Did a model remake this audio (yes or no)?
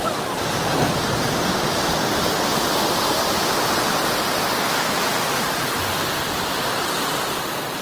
no